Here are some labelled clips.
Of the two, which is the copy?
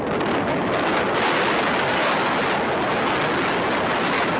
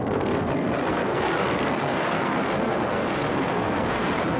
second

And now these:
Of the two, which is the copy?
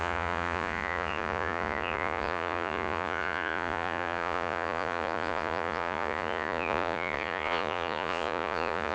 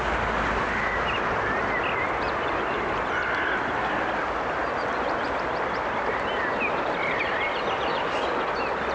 first